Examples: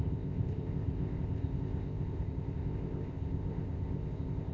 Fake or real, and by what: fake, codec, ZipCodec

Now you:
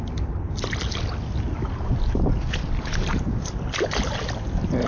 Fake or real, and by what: real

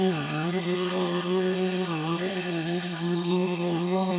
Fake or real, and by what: fake, codec, ZipCodec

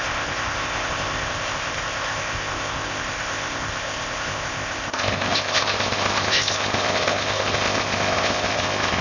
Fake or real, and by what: fake, codec, ZipCodec